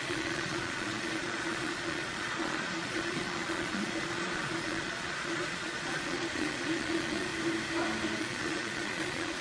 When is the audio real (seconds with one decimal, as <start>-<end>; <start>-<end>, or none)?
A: 7.3-8.2